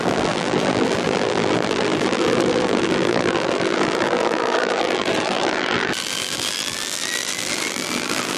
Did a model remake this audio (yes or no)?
yes